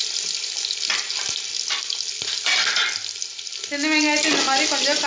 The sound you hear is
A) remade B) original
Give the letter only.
B